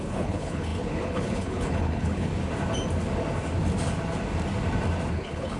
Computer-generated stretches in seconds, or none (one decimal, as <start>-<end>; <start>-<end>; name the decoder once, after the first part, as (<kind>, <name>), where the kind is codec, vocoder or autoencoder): 0.0-2.3 (codec, HILCodec); 5.1-5.6